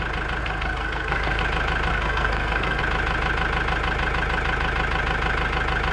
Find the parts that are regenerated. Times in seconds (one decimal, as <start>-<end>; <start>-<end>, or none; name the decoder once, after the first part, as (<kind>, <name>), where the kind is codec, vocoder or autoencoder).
0.4-1.4 (codec, SNAC); 1.9-2.8